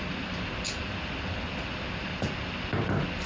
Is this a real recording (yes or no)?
yes